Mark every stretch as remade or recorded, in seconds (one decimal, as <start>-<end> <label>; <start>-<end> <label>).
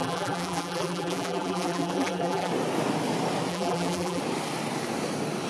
0.0-2.5 remade; 2.5-3.5 recorded; 3.5-4.2 remade; 4.2-5.5 recorded